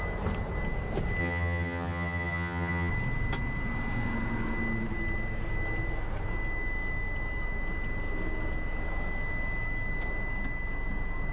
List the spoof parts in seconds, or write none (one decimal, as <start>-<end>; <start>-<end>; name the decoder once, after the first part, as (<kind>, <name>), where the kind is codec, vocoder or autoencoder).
1.2-2.9 (vocoder, HiFi-GAN)